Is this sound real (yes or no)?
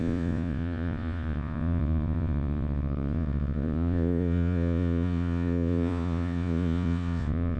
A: no